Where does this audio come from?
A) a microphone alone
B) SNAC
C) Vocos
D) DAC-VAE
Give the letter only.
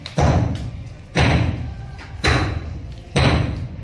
C